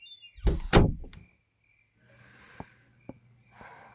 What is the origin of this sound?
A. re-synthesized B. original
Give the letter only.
B